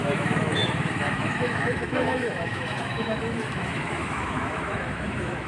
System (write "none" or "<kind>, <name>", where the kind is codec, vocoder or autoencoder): autoencoder, DAC-VAE